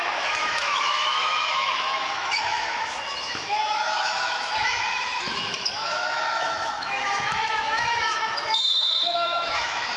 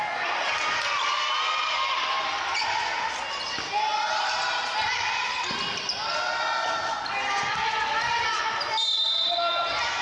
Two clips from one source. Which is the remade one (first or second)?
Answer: first